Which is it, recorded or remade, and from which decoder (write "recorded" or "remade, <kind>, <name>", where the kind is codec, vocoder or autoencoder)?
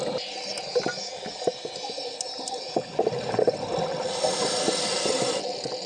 recorded